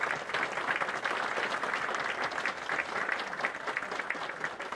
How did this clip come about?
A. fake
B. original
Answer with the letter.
B